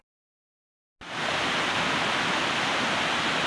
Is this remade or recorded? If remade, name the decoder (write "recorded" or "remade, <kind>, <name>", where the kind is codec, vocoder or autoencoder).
recorded